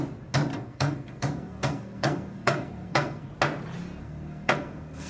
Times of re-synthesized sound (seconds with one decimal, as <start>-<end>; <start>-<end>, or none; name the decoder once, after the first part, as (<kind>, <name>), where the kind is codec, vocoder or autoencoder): 0.5-3.3 (codec, SNAC); 4.0-5.1